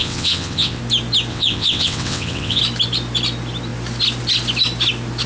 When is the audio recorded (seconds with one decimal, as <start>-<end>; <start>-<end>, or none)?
0.8-1.3; 2.6-5.3